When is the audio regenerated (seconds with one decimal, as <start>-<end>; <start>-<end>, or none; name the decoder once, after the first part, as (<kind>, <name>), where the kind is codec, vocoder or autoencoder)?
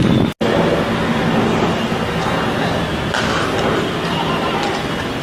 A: none